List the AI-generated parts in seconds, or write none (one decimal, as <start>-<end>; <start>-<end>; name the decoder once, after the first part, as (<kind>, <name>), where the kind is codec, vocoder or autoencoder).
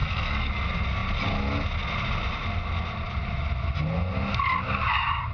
0.0-0.5 (codec, SNAC)